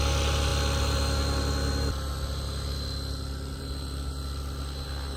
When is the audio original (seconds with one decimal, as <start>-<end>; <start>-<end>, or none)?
0.0-5.2